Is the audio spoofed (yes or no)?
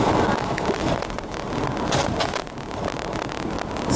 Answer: no